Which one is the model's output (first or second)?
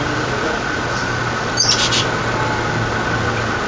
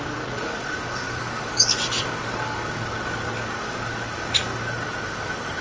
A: second